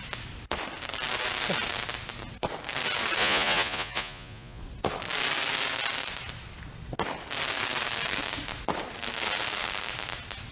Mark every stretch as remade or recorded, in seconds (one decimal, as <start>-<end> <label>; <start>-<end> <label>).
0.0-3.2 recorded; 3.2-4.6 remade; 4.6-10.5 recorded